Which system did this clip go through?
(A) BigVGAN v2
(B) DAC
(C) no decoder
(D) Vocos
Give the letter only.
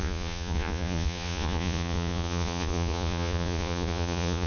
D